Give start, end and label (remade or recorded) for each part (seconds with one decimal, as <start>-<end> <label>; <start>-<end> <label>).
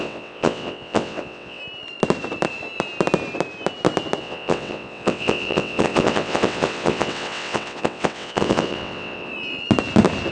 0.0-1.6 remade; 1.6-4.2 recorded; 4.2-9.3 remade; 9.3-10.3 recorded